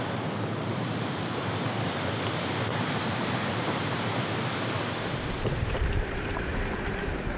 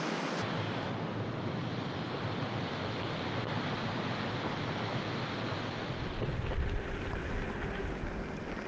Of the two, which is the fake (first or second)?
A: first